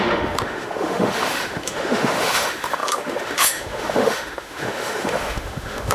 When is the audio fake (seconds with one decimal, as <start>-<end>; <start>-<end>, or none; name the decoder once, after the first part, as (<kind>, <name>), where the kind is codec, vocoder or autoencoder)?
0.0-5.9 (autoencoder, DAC-VAE)